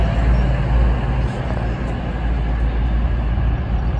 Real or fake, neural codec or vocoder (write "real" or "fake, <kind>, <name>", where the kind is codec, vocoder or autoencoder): real